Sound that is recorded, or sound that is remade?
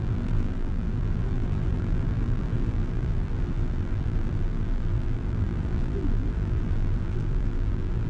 remade